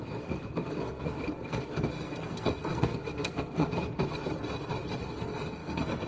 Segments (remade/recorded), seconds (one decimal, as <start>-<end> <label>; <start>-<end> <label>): 0.0-3.7 remade; 3.7-5.0 recorded; 5.0-6.1 remade